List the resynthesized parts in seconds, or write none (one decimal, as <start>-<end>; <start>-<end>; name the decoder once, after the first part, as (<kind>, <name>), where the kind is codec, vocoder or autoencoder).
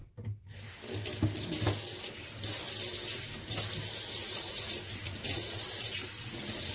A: 4.2-6.7 (vocoder, Vocos)